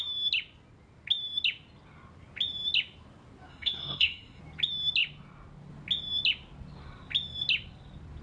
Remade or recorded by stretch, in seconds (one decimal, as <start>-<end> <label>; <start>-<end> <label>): 0.0-3.5 recorded; 3.5-4.4 remade; 4.4-8.2 recorded